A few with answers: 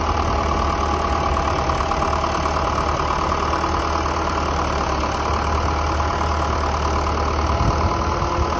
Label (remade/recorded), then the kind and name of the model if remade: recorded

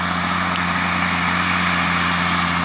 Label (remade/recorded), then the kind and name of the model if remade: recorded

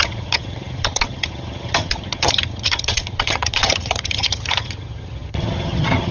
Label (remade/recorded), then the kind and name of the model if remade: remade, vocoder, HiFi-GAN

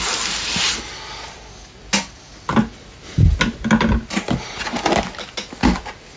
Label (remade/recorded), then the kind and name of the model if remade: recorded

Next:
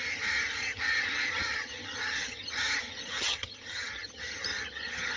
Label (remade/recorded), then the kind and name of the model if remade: remade, vocoder, HiFi-GAN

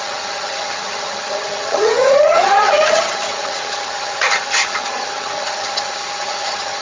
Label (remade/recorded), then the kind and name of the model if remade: remade, vocoder, HiFi-GAN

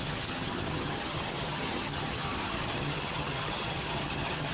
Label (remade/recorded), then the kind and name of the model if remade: remade, vocoder, HiFi-GAN